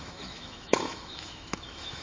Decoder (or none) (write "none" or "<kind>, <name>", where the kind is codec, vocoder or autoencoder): autoencoder, DAC-VAE